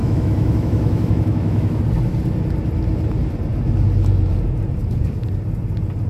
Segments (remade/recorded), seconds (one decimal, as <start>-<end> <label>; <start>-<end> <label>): 0.0-1.8 remade; 1.8-6.1 recorded